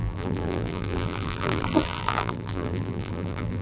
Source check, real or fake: fake